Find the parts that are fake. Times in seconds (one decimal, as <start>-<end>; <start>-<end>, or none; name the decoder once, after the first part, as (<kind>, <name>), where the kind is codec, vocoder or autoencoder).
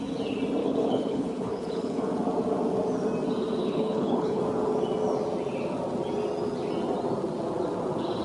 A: 0.6-2.0 (codec, HILCodec); 3.6-4.4